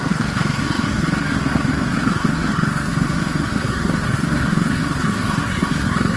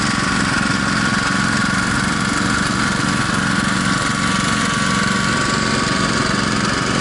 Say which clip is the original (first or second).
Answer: second